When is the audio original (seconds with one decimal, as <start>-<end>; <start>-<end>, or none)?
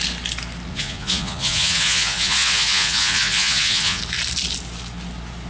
0.0-0.7; 4.0-5.5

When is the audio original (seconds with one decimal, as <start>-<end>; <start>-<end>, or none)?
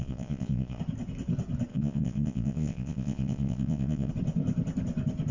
0.8-1.7; 4.1-5.3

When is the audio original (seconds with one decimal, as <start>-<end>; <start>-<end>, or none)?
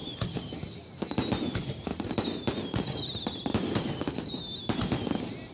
0.0-5.5